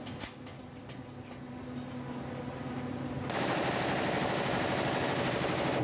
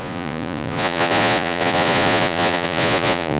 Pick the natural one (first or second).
first